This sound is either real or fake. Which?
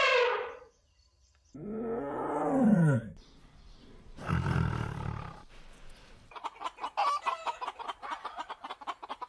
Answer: fake